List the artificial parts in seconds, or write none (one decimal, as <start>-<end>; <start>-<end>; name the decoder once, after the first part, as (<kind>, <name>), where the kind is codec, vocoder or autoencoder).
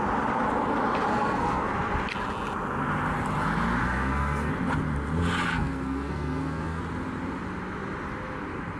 1.1-1.7 (codec, SNAC); 3.8-4.5; 5.5-6.8